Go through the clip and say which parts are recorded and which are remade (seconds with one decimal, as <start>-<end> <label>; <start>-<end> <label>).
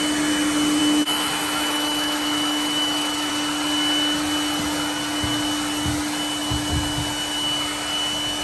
0.0-0.8 recorded; 0.8-3.3 remade; 3.3-8.4 recorded